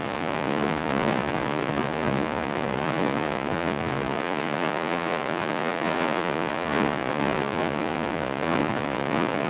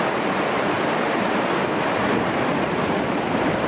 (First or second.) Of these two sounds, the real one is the second